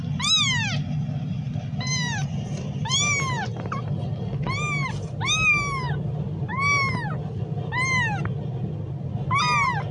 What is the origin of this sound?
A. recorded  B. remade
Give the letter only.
A